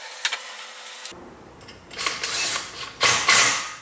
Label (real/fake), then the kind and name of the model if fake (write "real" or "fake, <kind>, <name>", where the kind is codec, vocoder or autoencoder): real